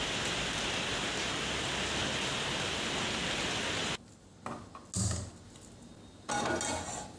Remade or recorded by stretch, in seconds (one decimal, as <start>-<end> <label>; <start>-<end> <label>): 0.0-7.2 recorded